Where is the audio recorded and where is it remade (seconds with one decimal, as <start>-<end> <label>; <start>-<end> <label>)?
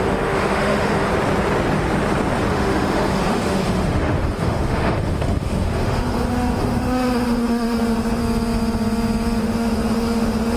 0.0-1.1 remade; 1.1-2.5 recorded; 2.5-8.2 remade; 8.2-9.4 recorded; 9.4-10.6 remade